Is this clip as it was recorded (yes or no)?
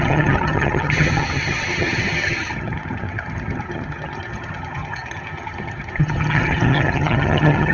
no